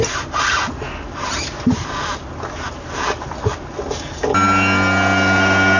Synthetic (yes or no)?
no